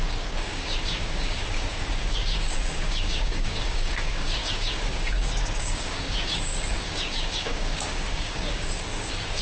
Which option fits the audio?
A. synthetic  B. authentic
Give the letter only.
A